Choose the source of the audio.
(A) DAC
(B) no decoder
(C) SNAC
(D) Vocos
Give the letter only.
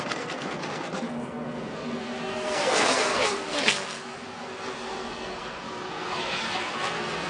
C